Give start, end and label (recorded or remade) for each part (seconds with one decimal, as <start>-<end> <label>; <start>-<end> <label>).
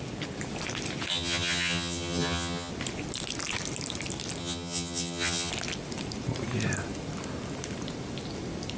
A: 0.0-1.1 recorded; 1.1-2.7 remade; 2.7-4.4 recorded; 4.4-5.5 remade; 5.5-8.8 recorded